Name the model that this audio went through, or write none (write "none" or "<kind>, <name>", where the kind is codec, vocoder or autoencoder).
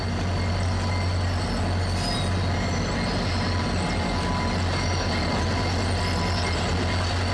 none